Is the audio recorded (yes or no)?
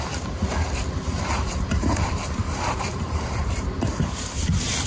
no